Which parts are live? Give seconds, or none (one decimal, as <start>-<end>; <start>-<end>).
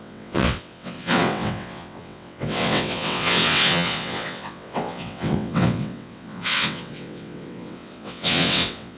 none